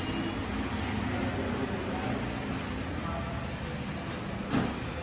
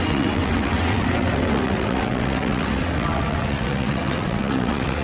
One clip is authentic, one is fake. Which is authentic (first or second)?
first